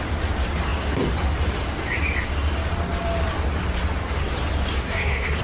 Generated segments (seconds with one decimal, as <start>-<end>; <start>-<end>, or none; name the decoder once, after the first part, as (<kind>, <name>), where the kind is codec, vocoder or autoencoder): 4.8-5.4 (codec, SNAC)